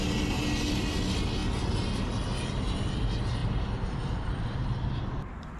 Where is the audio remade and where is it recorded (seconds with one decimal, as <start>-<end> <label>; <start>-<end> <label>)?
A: 0.0-5.6 recorded